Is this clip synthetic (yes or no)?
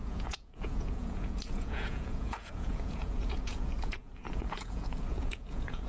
yes